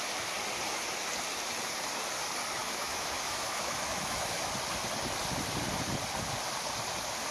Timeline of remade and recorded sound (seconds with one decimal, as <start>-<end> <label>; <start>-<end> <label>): 0.0-2.6 recorded; 2.6-4.5 remade; 4.5-7.3 recorded